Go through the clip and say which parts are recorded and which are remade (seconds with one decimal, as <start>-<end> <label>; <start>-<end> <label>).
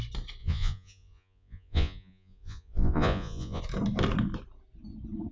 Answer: 0.0-0.4 recorded; 0.4-3.6 remade; 3.6-5.3 recorded